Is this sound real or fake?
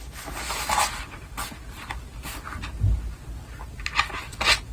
real